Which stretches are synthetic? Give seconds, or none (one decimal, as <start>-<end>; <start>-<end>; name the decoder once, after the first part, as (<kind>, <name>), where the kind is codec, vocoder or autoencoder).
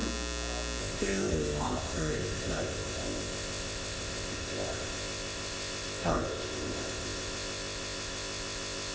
0.8-8.9 (codec, ZipCodec)